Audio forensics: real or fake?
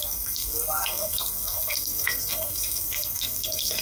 fake